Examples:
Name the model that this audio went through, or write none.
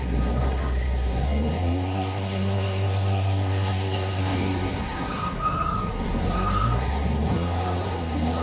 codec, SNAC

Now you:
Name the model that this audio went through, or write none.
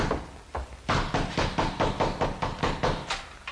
none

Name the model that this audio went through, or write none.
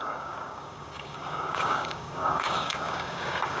codec, DAC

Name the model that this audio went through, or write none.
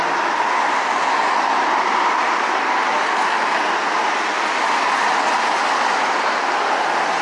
none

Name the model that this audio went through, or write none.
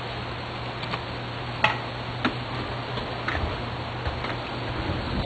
none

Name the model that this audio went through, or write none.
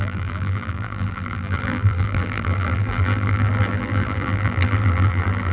vocoder, BigVGAN v2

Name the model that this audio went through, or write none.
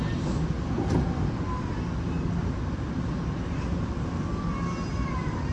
none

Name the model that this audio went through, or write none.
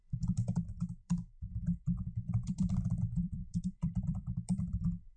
vocoder, BigVGAN v2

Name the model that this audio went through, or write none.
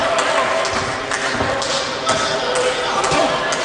none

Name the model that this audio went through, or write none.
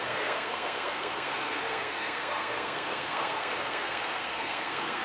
codec, SNAC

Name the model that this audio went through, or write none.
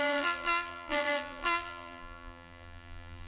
vocoder, BigVGAN v2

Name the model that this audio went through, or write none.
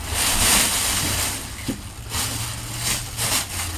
none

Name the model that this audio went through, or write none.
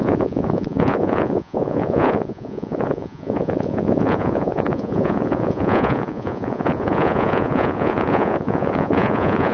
vocoder, Vocos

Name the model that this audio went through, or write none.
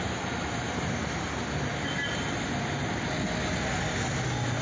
none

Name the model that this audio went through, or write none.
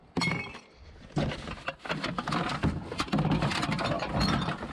none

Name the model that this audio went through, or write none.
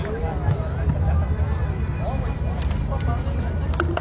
none